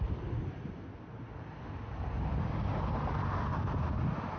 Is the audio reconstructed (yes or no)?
no